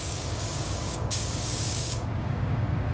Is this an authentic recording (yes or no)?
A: no